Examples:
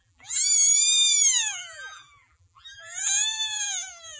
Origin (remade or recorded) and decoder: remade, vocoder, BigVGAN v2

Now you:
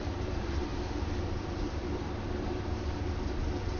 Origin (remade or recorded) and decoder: remade, vocoder, BigVGAN v2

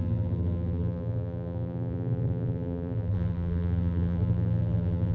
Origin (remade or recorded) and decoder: remade, vocoder, BigVGAN v2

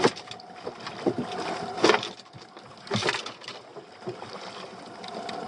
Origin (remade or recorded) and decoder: recorded